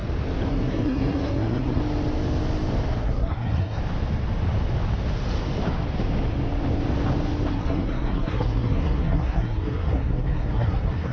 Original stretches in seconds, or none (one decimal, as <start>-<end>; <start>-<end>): 0.0-0.5; 1.8-3.0; 3.8-7.5